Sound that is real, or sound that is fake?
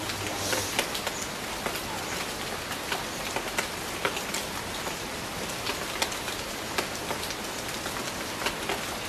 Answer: real